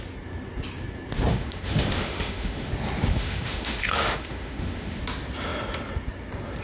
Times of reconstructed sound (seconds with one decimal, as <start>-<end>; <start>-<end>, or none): 1.3-2.7; 3.1-5.0